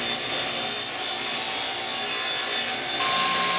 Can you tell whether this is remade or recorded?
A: recorded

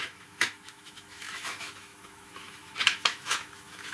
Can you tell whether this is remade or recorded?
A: remade